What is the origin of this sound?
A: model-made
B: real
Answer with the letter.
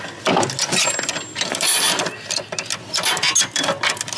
B